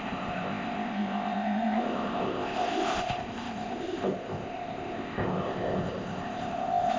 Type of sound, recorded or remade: remade